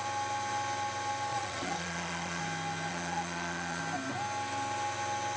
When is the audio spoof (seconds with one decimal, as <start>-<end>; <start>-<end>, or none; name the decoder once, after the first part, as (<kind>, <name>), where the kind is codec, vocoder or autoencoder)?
1.3-2.4 (vocoder, Vocos); 2.9-3.8